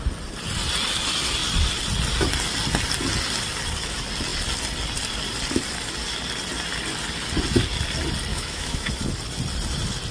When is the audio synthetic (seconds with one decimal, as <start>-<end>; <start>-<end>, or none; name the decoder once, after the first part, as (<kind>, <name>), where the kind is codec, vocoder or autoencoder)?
8.3-8.9 (autoencoder, DAC-VAE)